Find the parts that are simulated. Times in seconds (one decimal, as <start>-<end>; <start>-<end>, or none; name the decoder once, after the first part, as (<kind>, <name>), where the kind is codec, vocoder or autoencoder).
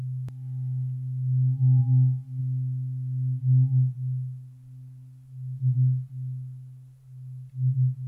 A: none